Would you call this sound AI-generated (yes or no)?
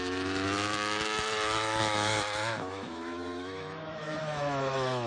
yes